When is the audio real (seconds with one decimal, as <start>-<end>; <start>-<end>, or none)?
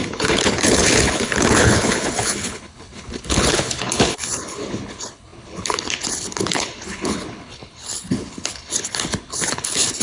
none